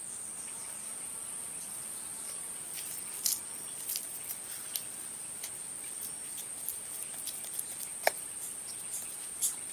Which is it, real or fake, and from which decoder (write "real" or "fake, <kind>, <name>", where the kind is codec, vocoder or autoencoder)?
real